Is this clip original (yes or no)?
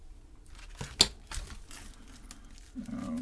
yes